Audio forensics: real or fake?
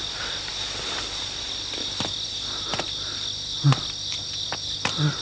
real